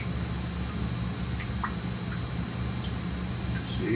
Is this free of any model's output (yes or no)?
yes